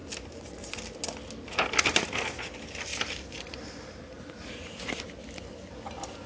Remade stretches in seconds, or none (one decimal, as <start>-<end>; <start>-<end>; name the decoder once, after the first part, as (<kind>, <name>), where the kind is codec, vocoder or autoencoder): 2.9-5.0 (vocoder, BigVGAN v2)